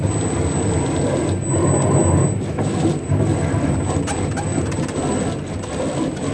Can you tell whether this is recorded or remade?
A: recorded